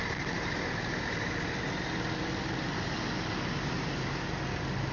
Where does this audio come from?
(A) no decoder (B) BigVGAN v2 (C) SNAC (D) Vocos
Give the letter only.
A